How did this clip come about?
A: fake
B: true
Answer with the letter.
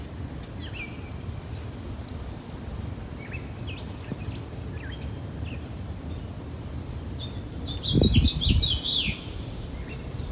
B